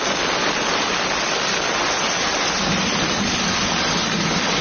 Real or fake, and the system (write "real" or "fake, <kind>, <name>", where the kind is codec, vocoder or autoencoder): real